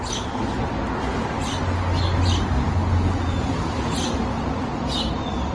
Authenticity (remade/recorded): recorded